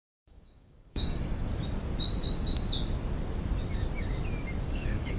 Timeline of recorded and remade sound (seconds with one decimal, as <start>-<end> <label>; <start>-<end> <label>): 0.0-1.5 remade; 1.5-4.6 recorded; 4.6-5.2 remade